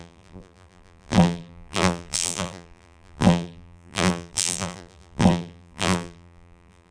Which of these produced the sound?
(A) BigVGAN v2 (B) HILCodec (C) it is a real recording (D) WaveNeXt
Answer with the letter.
A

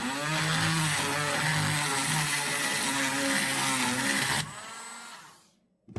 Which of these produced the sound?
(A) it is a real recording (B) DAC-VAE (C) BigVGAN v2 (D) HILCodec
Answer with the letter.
A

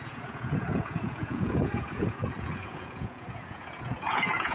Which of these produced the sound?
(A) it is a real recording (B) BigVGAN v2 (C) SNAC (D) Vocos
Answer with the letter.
D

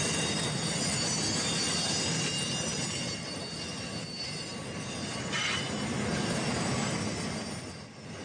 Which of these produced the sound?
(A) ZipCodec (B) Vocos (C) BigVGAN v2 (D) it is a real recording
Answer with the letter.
D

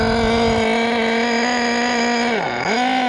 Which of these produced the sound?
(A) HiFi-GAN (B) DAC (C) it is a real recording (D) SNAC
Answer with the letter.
C